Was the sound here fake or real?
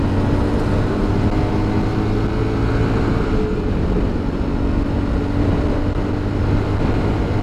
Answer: real